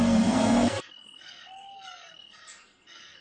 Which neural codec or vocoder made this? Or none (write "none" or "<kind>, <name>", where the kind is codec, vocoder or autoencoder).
codec, SNAC